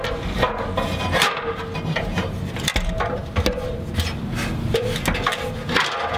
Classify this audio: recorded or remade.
recorded